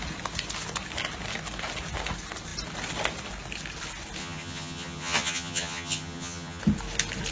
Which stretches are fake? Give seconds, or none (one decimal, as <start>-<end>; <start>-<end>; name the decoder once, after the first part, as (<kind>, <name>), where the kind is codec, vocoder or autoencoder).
4.2-6.6 (vocoder, HiFi-GAN)